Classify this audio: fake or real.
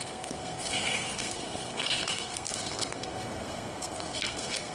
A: fake